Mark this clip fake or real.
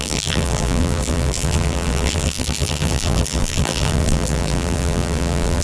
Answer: fake